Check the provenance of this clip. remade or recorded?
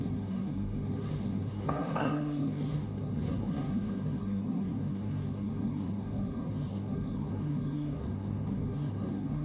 remade